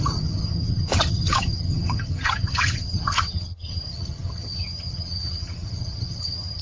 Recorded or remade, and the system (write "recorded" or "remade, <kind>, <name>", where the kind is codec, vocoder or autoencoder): remade, vocoder, HiFi-GAN